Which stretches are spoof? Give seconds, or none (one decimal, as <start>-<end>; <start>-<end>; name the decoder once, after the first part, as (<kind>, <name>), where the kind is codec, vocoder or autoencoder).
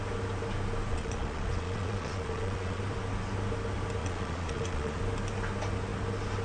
0.9-2.8 (vocoder, Vocos); 4.0-5.0